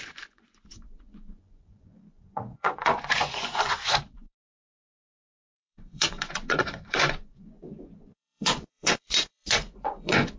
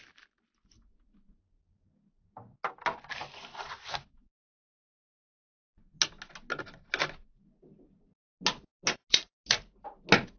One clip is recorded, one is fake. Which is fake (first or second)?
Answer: first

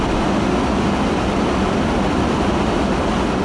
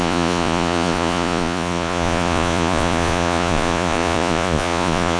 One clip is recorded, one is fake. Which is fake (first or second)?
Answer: second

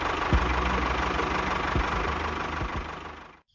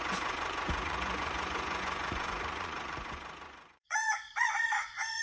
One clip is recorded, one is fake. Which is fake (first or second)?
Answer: second